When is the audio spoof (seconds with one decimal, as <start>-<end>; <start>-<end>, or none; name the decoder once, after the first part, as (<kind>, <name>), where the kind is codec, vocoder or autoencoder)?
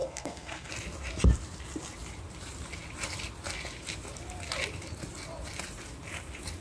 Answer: 0.0-0.7 (codec, SNAC)